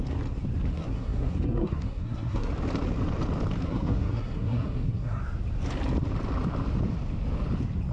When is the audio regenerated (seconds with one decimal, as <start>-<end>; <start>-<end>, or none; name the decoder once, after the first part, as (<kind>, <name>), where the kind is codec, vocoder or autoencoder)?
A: 0.7-2.5 (codec, SNAC); 3.6-5.2